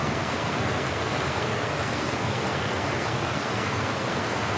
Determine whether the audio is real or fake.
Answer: fake